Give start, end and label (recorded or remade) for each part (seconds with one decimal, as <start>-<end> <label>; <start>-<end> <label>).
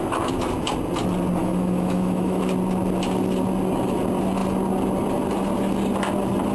0.0-1.4 recorded; 1.4-2.4 remade; 2.4-6.5 recorded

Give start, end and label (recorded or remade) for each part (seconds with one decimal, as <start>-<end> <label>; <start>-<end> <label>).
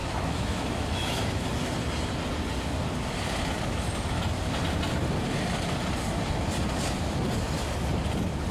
0.0-1.5 remade; 1.5-8.5 recorded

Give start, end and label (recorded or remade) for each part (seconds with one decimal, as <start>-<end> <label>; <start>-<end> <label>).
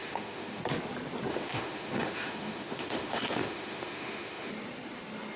0.0-0.6 remade; 0.6-1.3 recorded; 1.3-4.5 remade; 4.5-5.4 recorded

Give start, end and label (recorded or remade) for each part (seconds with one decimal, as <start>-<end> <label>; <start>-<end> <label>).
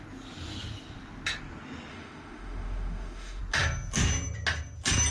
0.0-1.9 recorded; 1.9-3.4 remade; 3.4-5.1 recorded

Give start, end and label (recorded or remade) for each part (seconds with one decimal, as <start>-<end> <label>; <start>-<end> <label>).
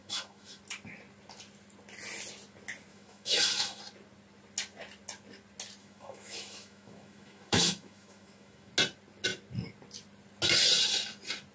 0.0-0.6 remade; 0.6-2.9 recorded; 2.9-3.8 remade; 3.8-5.8 recorded; 5.8-8.7 remade; 8.7-11.5 recorded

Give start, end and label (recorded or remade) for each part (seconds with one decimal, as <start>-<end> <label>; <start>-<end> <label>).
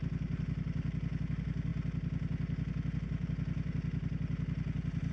0.0-5.1 recorded